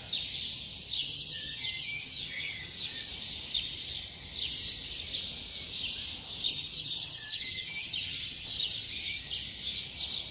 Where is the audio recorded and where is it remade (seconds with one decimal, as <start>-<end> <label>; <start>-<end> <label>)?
0.0-1.0 recorded; 1.0-2.9 remade; 2.9-6.5 recorded; 6.5-8.8 remade; 8.8-10.3 recorded